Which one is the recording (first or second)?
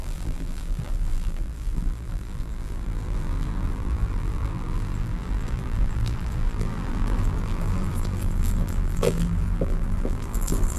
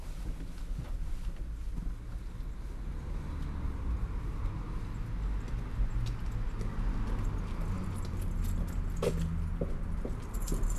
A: second